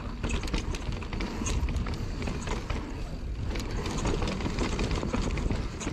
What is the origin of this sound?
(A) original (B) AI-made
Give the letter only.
A